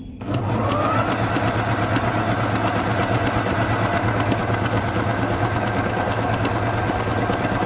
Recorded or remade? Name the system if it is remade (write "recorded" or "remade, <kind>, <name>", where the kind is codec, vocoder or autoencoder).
recorded